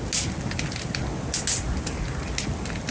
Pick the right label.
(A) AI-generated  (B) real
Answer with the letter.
B